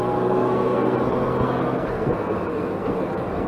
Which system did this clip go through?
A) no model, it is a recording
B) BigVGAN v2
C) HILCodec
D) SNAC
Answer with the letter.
D